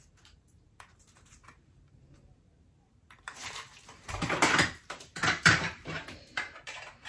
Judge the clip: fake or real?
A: fake